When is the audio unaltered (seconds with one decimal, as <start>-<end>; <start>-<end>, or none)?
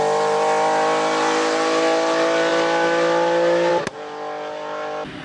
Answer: 0.0-5.2